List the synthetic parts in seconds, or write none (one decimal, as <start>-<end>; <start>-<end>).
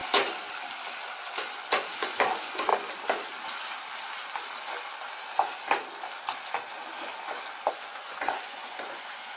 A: 1.4-2.7; 7.7-9.4